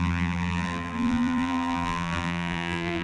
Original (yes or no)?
no